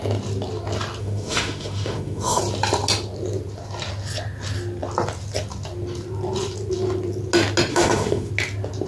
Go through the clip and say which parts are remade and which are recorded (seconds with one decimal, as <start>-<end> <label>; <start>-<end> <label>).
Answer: 0.0-1.0 recorded; 1.0-2.4 remade; 2.4-7.7 recorded; 7.7-8.3 remade; 8.3-8.9 recorded